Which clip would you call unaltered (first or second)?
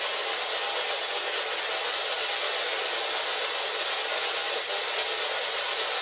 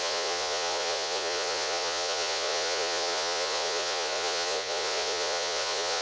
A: first